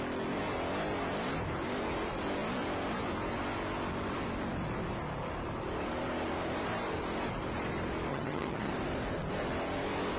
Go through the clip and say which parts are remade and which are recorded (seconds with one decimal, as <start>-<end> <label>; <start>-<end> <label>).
0.0-8.1 recorded; 8.1-8.7 remade; 8.7-10.2 recorded